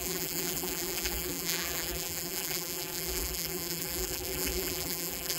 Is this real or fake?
fake